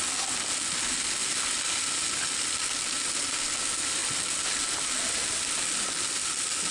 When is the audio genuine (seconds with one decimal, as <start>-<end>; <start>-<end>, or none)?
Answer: 0.0-6.7